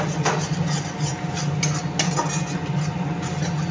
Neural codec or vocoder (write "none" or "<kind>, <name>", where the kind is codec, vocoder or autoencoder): none